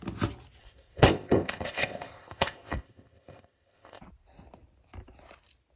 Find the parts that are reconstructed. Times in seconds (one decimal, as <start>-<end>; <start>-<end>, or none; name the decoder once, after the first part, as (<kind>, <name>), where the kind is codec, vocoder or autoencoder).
0.6-4.0 (codec, ZipCodec)